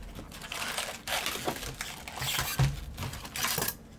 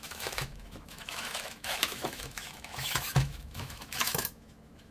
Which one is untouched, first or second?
first